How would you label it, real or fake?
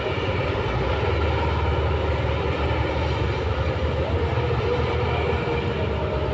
real